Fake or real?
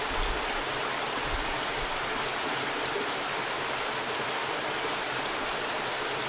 real